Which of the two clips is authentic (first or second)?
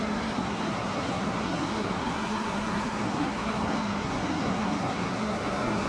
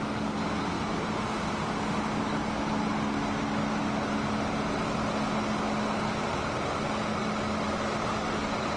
second